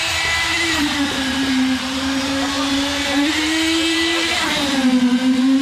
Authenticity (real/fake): fake